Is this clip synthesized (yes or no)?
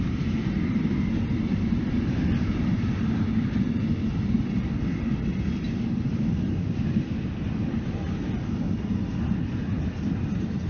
no